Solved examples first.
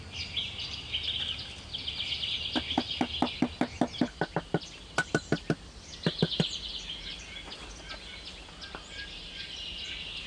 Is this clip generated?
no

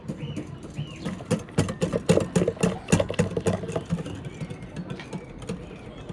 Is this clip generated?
no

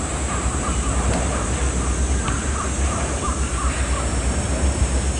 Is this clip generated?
yes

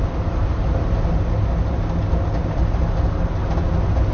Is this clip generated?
no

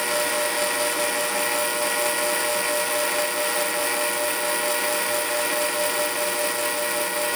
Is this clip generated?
no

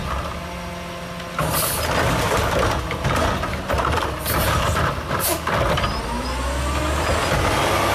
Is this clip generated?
no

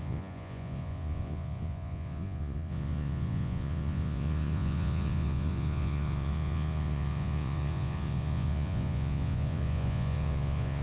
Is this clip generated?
yes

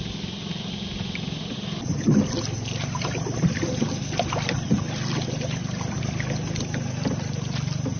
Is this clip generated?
no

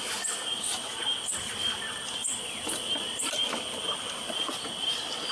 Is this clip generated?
no